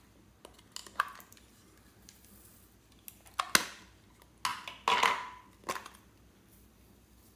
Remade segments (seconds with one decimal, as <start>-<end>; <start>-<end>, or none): none